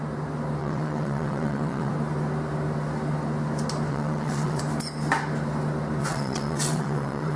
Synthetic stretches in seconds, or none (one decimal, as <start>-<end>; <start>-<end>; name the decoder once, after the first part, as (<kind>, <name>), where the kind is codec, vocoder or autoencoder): 0.6-1.9 (vocoder, WaveNeXt); 3.9-4.6; 6.0-7.4